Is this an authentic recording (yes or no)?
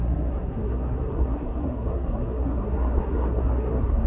no